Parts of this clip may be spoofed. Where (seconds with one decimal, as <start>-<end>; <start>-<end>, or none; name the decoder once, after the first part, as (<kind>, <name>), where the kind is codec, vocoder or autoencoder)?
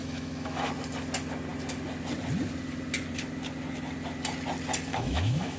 0.0-0.7 (autoencoder, DAC-VAE); 4.9-5.6